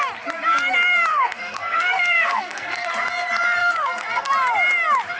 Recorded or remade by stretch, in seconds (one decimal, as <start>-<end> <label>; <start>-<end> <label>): 0.0-1.1 recorded; 1.1-2.9 remade; 2.9-3.6 recorded; 3.6-4.3 remade; 4.3-5.2 recorded